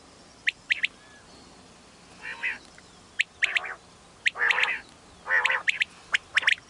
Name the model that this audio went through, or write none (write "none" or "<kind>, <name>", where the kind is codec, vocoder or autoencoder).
none